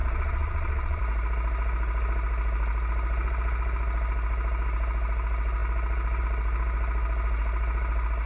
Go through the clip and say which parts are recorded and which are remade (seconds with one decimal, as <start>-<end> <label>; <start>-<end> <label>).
0.0-1.0 remade; 1.0-8.3 recorded